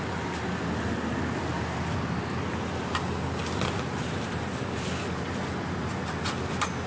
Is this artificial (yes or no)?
no